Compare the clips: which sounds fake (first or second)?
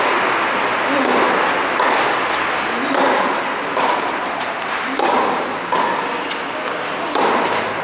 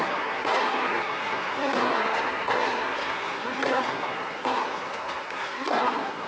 second